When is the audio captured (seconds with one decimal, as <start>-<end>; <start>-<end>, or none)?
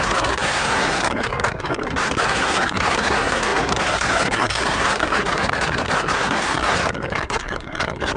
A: none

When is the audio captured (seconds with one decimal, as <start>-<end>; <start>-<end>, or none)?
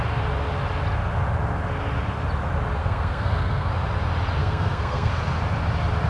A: 0.0-2.8; 3.7-4.4; 5.1-6.1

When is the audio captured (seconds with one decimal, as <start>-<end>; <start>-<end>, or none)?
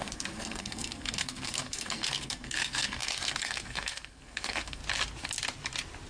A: 4.8-6.1